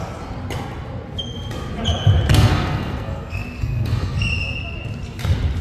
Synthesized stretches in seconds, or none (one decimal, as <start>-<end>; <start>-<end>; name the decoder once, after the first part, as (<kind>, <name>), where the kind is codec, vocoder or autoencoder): 2.3-4.3 (codec, SNAC)